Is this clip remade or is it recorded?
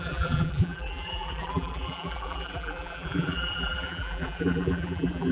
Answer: remade